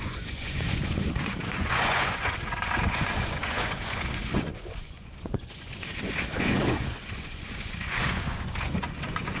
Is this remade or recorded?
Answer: remade